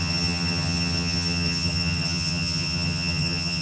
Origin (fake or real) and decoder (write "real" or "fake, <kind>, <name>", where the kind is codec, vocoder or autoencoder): fake, vocoder, HiFi-GAN